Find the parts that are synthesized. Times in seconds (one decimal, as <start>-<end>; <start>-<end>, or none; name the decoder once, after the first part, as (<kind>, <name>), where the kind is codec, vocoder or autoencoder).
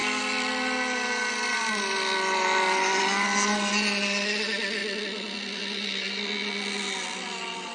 none